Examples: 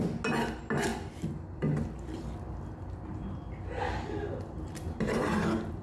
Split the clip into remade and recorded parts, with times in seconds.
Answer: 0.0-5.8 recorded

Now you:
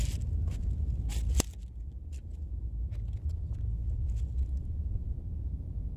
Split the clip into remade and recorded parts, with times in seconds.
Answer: 0.0-6.0 recorded

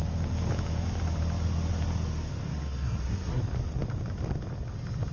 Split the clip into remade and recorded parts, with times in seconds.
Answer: 0.0-2.5 recorded; 2.5-3.4 remade; 3.4-5.1 recorded